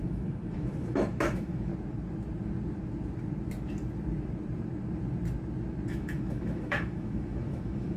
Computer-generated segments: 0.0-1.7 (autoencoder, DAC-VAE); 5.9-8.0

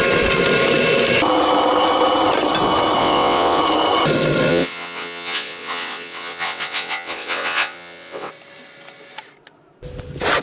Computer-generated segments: 3.0-3.6 (vocoder, WaveNeXt); 4.5-8.3

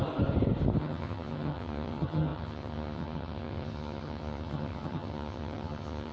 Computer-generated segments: 0.8-6.1 (vocoder, HiFi-GAN)

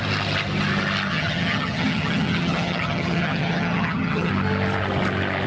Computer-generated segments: 1.1-4.3 (vocoder, HiFi-GAN)

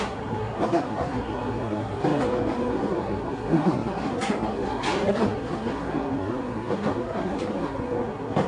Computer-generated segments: 0.0-8.5 (codec, SNAC)

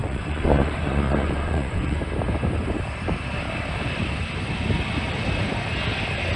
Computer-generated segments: 0.0-2.0 (vocoder, Vocos)

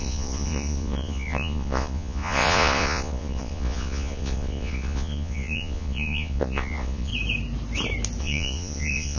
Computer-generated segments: 0.0-7.1 (vocoder, Vocos); 8.2-9.2

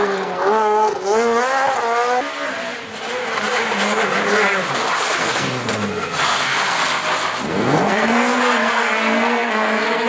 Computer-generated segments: 0.0-1.5 (codec, SNAC); 5.2-6.8; 7.4-10.1